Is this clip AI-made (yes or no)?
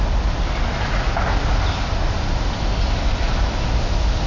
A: no